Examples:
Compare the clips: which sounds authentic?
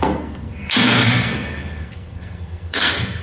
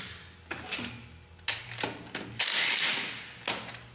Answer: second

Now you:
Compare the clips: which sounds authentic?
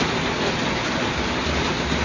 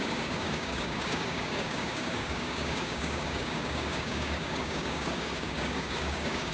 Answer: first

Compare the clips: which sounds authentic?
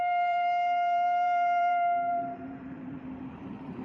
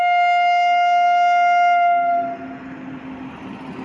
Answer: second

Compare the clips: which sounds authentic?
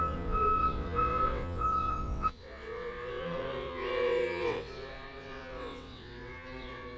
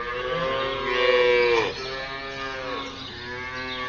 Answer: second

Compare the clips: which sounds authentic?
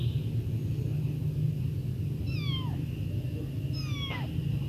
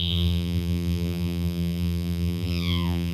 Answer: first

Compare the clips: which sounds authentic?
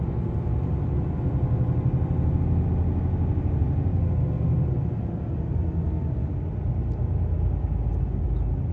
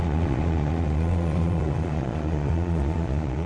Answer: first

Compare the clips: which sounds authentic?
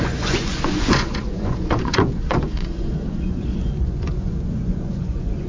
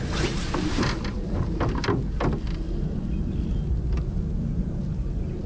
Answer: second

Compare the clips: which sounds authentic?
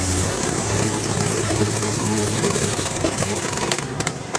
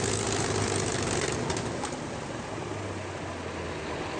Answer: second